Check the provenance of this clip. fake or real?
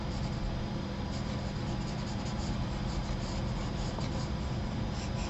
real